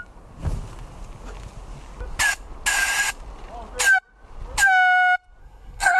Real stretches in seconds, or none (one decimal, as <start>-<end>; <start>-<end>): 0.0-5.4